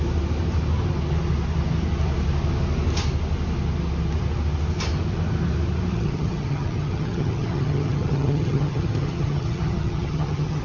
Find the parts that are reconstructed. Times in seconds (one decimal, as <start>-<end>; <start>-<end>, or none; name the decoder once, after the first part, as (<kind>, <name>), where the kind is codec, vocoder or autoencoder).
5.9-10.6 (vocoder, HiFi-GAN)